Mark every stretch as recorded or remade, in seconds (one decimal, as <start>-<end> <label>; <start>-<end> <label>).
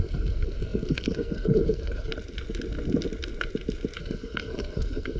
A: 0.0-2.1 remade; 2.1-4.0 recorded; 4.0-5.2 remade